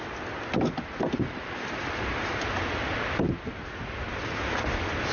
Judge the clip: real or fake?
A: real